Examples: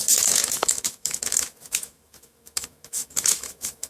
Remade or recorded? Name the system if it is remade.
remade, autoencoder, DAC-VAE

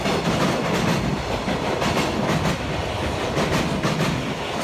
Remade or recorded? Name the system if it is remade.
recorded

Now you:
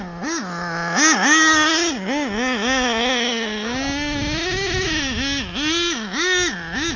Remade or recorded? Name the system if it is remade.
recorded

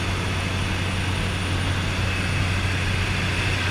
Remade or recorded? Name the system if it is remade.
recorded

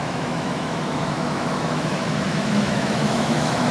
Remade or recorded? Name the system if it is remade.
remade, autoencoder, DAC-VAE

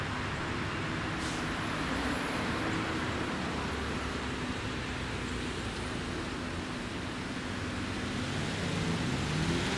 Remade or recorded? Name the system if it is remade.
recorded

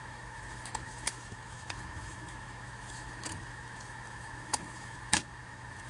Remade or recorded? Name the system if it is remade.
remade, autoencoder, DAC-VAE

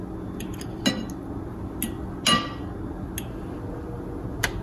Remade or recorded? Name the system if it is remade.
recorded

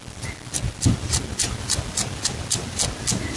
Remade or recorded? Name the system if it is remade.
recorded